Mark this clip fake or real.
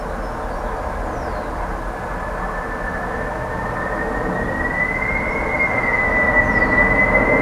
real